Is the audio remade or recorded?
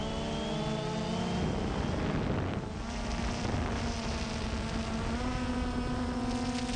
recorded